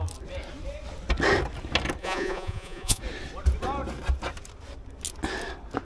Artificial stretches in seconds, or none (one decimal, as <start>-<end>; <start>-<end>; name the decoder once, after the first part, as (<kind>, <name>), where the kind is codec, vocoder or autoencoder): 2.0-3.0 (vocoder, Vocos)